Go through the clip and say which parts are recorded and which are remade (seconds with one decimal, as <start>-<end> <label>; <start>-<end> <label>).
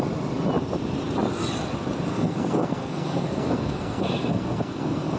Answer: 0.0-2.1 recorded; 2.1-5.2 remade